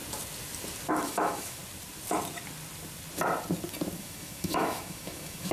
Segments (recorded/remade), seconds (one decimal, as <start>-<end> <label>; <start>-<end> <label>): 0.0-0.9 recorded; 0.9-1.6 remade; 1.6-4.0 recorded; 4.0-5.5 remade